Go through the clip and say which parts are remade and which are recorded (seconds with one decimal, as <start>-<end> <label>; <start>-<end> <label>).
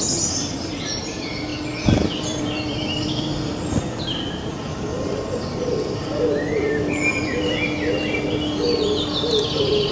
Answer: 0.0-9.9 recorded